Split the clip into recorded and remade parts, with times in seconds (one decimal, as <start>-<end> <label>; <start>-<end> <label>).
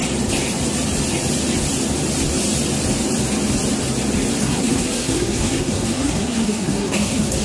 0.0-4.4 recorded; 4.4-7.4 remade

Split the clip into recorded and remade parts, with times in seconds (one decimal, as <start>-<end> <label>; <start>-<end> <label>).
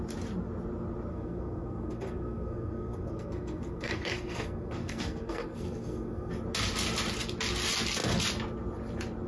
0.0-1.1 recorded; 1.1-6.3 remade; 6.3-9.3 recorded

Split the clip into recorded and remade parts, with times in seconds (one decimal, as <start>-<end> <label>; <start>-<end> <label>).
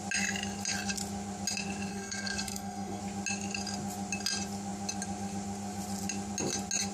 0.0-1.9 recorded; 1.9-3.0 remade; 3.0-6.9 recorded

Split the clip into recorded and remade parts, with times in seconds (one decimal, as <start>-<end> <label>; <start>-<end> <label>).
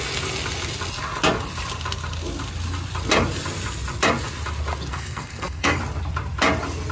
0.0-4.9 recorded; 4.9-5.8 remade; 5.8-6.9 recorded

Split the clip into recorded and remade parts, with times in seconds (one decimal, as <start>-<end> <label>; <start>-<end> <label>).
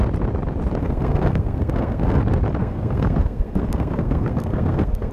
0.0-0.8 recorded; 0.8-2.2 remade; 2.2-2.6 recorded; 2.6-5.1 remade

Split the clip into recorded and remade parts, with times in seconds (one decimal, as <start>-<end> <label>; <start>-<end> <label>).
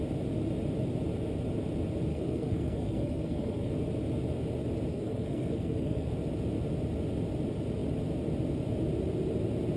0.0-2.1 recorded; 2.1-3.7 remade; 3.7-4.9 recorded; 4.9-6.1 remade; 6.1-9.8 recorded